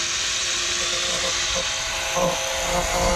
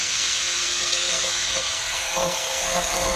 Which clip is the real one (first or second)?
first